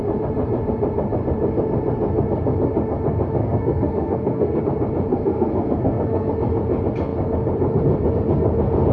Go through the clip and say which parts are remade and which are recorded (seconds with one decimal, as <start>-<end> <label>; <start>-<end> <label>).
0.0-3.4 recorded; 3.4-4.6 remade; 4.6-5.1 recorded; 5.1-6.3 remade; 6.3-8.9 recorded